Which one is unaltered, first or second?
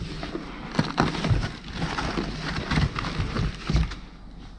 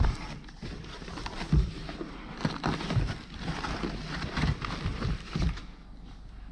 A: first